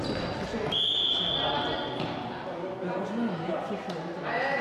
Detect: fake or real real